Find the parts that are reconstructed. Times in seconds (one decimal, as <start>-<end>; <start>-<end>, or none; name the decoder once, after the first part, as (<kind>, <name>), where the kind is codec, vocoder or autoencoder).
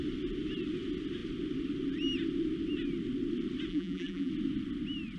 3.7-4.3 (vocoder, BigVGAN v2)